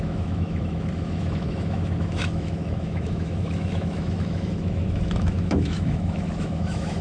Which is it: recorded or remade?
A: remade